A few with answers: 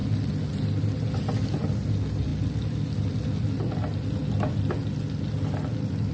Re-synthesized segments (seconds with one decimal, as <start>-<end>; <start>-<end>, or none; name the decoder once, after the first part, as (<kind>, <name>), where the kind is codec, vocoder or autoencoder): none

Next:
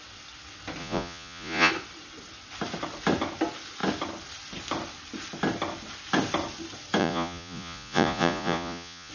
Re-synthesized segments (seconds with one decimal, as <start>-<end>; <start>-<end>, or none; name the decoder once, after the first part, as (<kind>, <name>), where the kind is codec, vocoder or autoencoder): 0.8-1.7 (vocoder, Vocos); 7.0-9.1

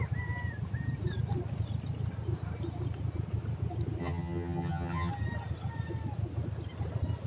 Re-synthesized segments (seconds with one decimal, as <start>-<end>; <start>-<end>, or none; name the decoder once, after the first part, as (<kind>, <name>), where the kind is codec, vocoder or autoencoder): 4.0-5.1 (vocoder, HiFi-GAN)

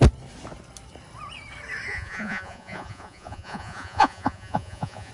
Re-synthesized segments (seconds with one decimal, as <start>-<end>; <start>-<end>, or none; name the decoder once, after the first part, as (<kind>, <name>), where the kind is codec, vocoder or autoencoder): 1.9-5.1 (vocoder, Vocos)

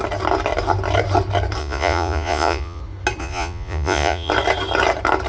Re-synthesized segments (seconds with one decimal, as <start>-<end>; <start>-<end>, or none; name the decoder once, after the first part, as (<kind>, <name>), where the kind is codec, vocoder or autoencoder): 1.6-2.8 (vocoder, Vocos); 3.2-4.3

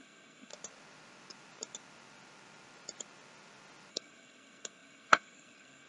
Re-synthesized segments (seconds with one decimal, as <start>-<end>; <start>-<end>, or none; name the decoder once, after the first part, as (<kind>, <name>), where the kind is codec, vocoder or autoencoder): 0.0-0.5 (codec, SNAC); 3.9-5.9

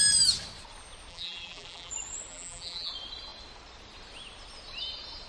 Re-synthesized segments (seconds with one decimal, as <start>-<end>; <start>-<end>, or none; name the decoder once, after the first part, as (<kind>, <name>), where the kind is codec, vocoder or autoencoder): 1.1-1.9 (vocoder, BigVGAN v2); 2.3-2.9